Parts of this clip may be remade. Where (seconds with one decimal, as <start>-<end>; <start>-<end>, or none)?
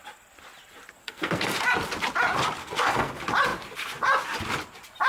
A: 1.0-1.6; 2.6-3.1